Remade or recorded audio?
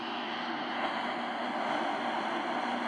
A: recorded